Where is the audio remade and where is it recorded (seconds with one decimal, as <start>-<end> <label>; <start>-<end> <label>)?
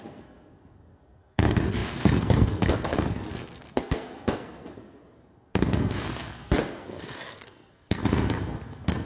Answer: 0.0-9.0 remade